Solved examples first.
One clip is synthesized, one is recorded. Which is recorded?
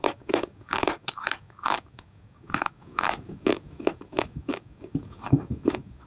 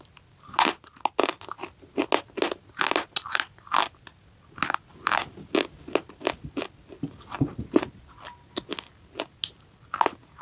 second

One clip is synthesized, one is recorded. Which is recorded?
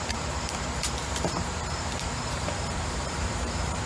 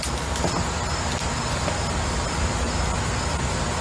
second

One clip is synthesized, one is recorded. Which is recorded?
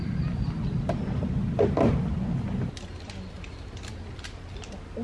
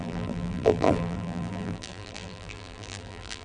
first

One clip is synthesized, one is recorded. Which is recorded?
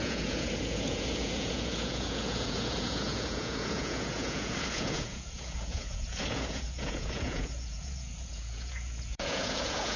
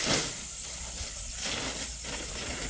second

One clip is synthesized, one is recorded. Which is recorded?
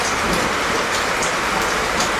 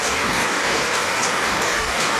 first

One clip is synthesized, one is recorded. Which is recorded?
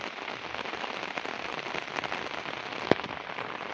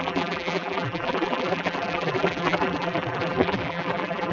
first